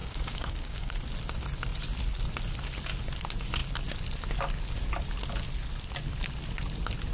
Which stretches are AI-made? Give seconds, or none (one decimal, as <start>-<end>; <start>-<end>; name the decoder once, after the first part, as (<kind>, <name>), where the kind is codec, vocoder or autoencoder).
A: 0.0-0.9 (codec, DAC)